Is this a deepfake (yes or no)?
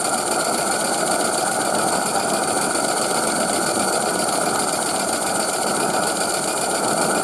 no